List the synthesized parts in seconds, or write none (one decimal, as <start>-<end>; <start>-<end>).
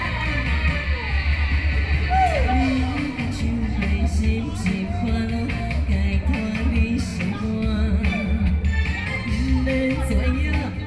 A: 7.1-8.5